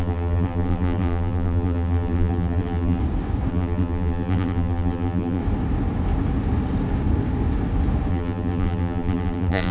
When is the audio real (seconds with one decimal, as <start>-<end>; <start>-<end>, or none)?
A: 3.0-3.5; 5.4-8.1